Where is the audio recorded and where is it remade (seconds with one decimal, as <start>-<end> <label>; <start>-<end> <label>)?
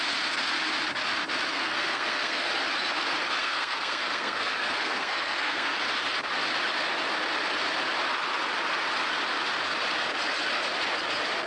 0.0-1.5 recorded; 1.5-2.5 remade; 2.5-3.4 recorded; 3.4-5.8 remade; 5.8-11.5 recorded